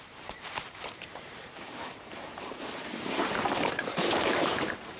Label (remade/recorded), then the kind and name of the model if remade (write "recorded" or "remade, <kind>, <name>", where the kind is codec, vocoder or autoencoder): remade, vocoder, BigVGAN v2